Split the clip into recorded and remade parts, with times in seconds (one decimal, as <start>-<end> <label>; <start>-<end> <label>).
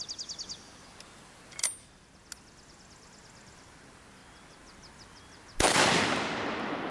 0.0-6.9 recorded